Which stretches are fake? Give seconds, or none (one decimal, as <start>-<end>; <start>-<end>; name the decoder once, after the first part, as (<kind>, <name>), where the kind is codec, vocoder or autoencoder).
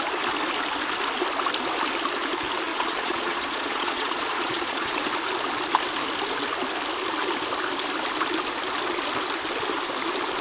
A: 2.7-4.9 (vocoder, Vocos)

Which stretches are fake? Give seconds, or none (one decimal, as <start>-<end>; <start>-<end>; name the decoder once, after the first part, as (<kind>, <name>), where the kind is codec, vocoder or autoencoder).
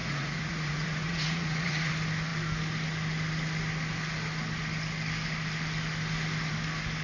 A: 0.0-1.9 (vocoder, Vocos)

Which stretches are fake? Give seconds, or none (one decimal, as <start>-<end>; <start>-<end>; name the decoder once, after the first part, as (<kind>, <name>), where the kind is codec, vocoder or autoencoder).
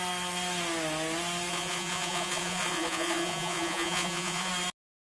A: 1.5-4.5 (vocoder, Vocos)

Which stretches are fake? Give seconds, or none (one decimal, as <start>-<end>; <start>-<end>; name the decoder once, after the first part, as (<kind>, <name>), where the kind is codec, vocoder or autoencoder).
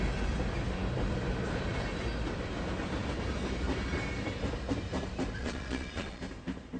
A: 5.4-6.2 (vocoder, Vocos)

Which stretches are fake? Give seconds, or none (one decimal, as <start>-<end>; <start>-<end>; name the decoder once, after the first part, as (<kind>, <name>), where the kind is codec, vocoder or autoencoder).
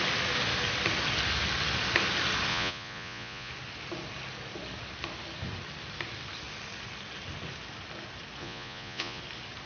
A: 2.5-3.5 (vocoder, Vocos); 8.4-9.2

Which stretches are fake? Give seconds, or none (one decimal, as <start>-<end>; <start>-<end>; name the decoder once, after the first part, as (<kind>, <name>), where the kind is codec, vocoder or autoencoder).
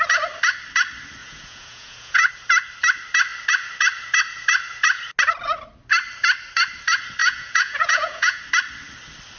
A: 1.2-2.3 (vocoder, Vocos); 7.2-8.4